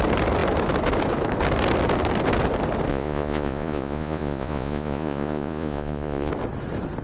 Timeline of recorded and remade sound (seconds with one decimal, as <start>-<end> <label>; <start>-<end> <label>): 0.0-2.9 recorded; 2.9-6.3 remade; 6.3-7.0 recorded